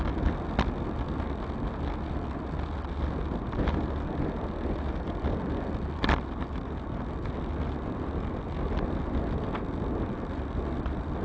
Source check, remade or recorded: recorded